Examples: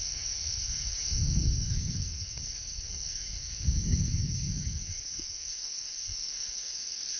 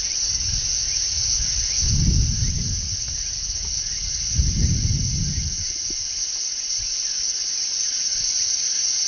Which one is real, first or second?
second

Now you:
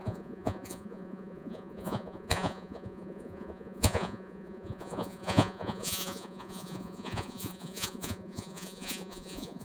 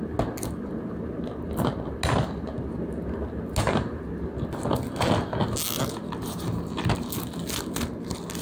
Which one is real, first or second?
second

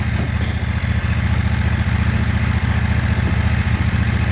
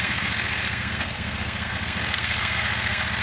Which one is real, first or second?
first